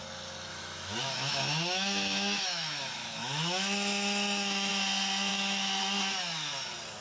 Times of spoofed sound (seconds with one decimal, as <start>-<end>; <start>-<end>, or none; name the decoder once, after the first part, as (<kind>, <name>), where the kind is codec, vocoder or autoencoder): 0.5-4.7 (autoencoder, DAC-VAE); 5.3-5.8